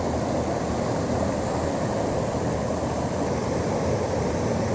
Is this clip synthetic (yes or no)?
no